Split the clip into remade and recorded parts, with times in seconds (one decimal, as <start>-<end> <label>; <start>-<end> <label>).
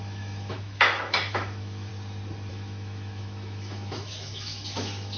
0.0-1.9 remade; 1.9-2.5 recorded; 2.5-5.2 remade